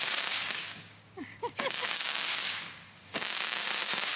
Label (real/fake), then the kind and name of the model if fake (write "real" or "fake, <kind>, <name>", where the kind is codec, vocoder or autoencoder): fake, codec, DAC